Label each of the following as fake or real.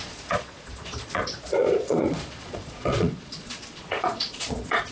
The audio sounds fake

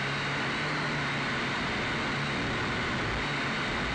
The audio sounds real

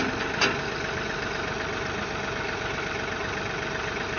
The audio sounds real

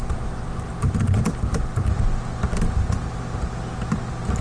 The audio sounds real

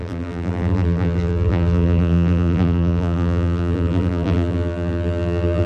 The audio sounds fake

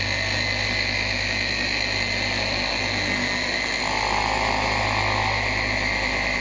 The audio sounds real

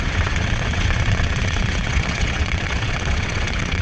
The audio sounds fake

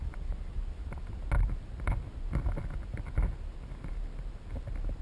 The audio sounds real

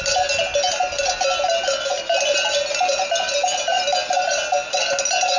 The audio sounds real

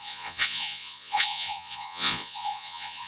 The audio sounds fake